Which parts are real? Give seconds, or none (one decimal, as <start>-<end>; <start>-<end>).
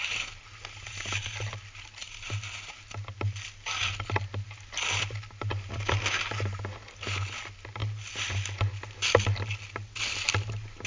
0.0-10.9